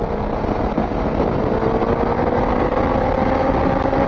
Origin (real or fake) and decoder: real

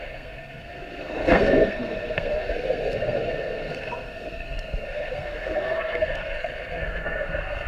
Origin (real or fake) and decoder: fake, codec, SNAC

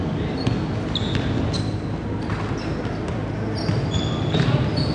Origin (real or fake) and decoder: real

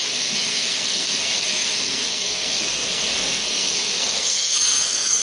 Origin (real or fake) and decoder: fake, codec, SNAC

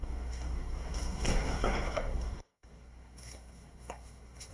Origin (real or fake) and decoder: fake, codec, SNAC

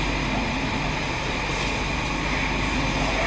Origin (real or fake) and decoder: real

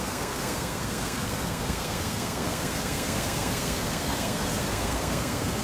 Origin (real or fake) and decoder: fake, codec, SNAC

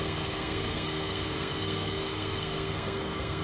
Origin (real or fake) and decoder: fake, codec, SNAC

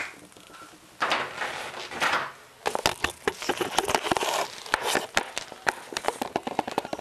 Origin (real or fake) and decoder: real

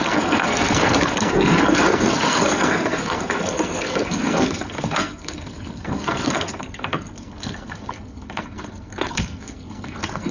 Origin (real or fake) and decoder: fake, codec, SNAC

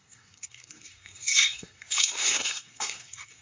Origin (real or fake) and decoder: fake, codec, SNAC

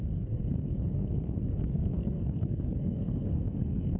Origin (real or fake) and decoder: fake, codec, SNAC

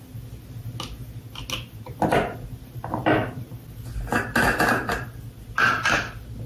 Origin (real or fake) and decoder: real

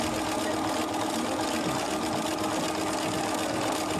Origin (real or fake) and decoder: real